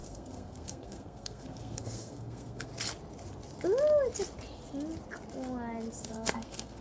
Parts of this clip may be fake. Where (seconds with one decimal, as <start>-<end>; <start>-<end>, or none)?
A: 0.0-2.7; 6.0-6.8